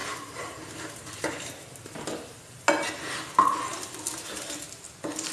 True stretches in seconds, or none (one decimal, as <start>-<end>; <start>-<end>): 2.6-5.3